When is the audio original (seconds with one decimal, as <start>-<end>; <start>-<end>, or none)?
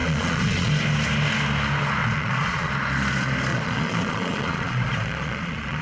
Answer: 0.7-2.0; 2.7-3.5